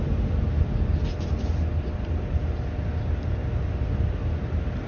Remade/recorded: recorded